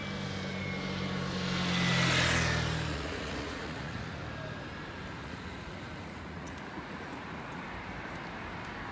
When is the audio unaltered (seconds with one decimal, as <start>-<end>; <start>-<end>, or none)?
0.0-2.9; 4.2-5.2; 7.6-8.9